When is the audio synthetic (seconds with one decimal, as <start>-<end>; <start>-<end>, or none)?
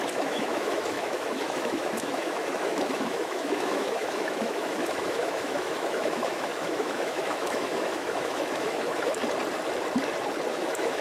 0.0-9.2; 10.5-11.0